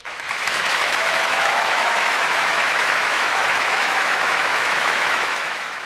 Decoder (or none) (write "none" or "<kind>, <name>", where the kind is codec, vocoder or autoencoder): autoencoder, DAC-VAE